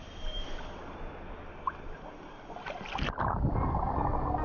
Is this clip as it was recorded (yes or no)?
yes